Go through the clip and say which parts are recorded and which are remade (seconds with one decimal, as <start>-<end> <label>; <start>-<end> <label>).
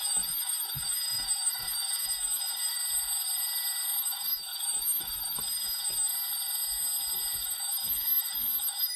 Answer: 0.0-2.8 remade; 2.8-4.0 recorded; 4.0-6.1 remade; 6.1-7.4 recorded; 7.4-9.0 remade